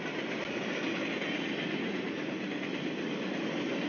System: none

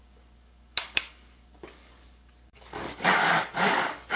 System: codec, DAC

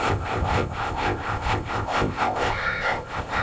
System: codec, ZipCodec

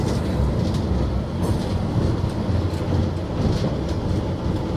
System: none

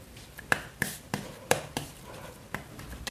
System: none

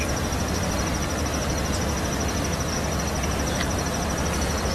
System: none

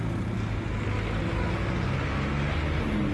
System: none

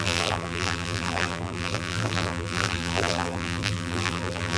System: vocoder, BigVGAN v2